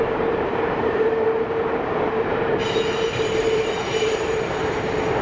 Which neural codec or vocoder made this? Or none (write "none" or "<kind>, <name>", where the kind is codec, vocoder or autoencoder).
vocoder, BigVGAN v2